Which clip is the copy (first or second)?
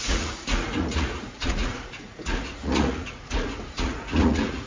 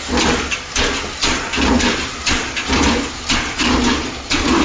first